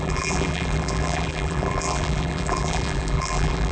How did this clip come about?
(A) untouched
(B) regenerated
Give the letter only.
B